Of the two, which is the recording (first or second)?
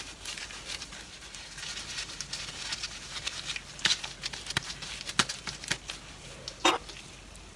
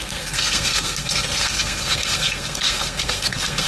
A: first